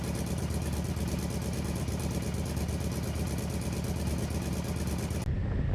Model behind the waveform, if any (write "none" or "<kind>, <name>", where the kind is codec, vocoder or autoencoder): none